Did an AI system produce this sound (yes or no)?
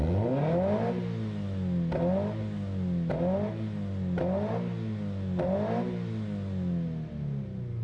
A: no